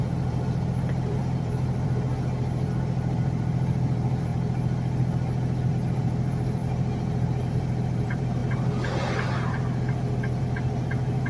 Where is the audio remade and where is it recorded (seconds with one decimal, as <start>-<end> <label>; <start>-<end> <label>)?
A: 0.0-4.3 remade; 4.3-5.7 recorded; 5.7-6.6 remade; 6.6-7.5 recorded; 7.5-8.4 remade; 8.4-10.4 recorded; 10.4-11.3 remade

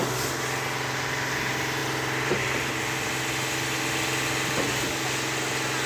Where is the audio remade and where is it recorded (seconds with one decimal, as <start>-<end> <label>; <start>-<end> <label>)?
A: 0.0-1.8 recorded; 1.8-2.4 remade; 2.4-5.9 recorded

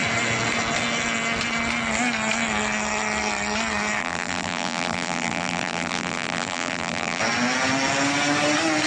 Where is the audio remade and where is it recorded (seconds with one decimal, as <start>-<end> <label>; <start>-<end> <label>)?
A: 0.0-4.0 recorded; 4.0-7.2 remade; 7.2-8.9 recorded

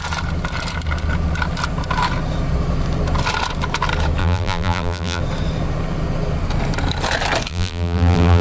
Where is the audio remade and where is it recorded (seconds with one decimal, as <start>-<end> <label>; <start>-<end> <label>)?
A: 0.0-4.2 recorded; 4.2-5.2 remade; 5.2-7.5 recorded; 7.5-8.4 remade

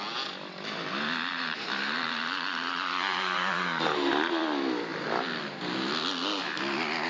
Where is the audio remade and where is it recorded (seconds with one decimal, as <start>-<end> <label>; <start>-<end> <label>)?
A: 0.0-1.3 recorded; 1.3-4.1 remade; 4.1-7.1 recorded

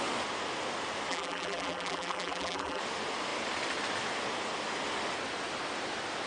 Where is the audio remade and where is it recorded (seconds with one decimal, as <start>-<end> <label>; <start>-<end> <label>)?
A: 0.0-1.1 recorded; 1.1-2.8 remade; 2.8-6.3 recorded

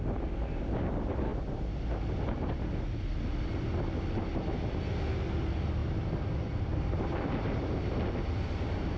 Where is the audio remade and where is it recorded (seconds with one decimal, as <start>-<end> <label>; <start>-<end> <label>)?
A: 0.0-6.7 recorded; 6.7-9.0 remade